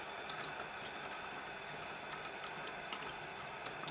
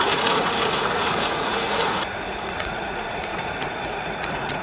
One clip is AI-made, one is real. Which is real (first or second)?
first